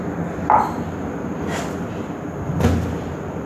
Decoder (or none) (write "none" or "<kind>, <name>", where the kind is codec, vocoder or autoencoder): none